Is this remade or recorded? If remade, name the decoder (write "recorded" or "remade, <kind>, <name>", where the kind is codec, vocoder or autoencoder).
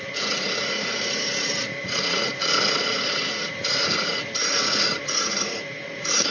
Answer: remade, vocoder, Vocos